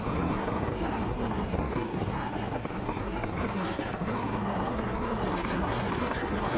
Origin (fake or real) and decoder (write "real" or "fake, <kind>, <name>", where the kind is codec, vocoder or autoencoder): fake, codec, SNAC